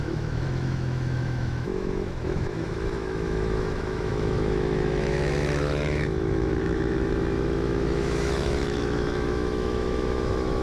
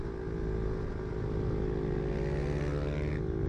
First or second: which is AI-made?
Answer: first